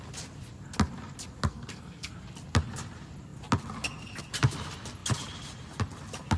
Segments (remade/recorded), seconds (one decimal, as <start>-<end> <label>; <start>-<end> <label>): 0.0-1.5 recorded; 1.5-2.1 remade; 2.1-6.4 recorded